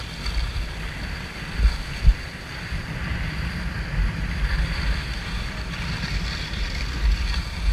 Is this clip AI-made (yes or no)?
no